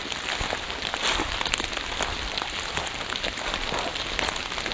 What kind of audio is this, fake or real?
real